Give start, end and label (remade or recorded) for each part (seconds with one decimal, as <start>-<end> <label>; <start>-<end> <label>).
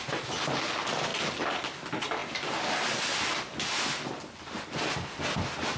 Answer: 0.0-5.8 recorded